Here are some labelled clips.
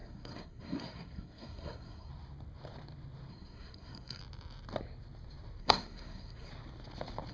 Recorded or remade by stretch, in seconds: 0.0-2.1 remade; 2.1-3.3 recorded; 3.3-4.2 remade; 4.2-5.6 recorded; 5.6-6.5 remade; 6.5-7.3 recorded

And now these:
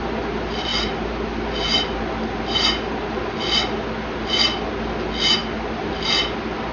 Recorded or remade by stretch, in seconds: 0.0-6.7 recorded

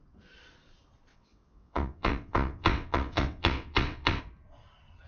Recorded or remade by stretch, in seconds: 0.0-1.1 recorded; 1.1-4.2 remade; 4.2-5.1 recorded

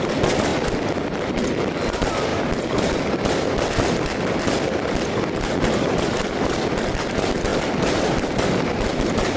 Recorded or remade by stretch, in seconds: 0.0-7.5 recorded; 7.5-8.8 remade; 8.8-9.4 recorded

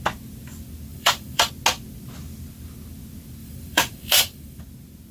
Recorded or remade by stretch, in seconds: 0.0-0.9 recorded; 0.9-1.5 remade; 1.5-3.4 recorded; 3.4-4.6 remade; 4.6-5.1 recorded

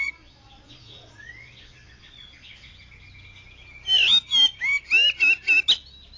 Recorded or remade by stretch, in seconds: 0.0-2.7 remade; 2.7-6.2 recorded